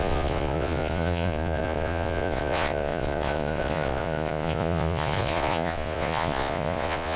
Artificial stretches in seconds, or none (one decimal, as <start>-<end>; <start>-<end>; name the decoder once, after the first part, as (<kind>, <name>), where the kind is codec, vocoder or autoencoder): 0.0-7.2 (vocoder, Vocos)